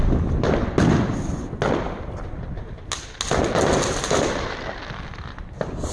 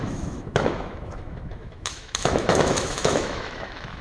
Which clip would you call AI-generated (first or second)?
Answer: second